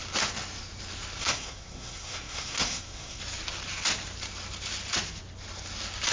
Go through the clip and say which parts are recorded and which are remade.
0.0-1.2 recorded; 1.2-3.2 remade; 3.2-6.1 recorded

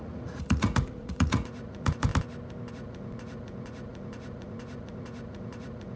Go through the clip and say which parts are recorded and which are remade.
0.0-2.1 remade; 2.1-2.7 recorded; 2.7-6.0 remade

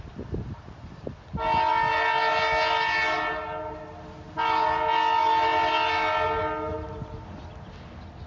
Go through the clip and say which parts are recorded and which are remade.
0.0-8.3 recorded

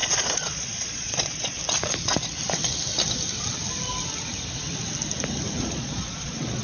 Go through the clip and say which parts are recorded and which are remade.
0.0-1.6 remade; 1.6-5.6 recorded; 5.6-6.6 remade

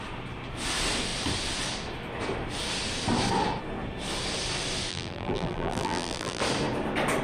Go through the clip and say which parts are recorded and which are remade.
0.0-4.9 recorded; 4.9-6.4 remade; 6.4-7.2 recorded

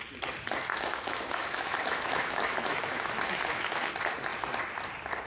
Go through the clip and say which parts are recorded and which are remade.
0.0-0.7 recorded; 0.7-3.9 remade; 3.9-5.3 recorded

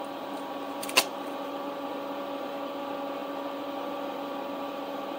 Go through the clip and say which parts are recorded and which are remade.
0.0-5.2 recorded